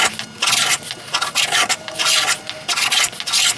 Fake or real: real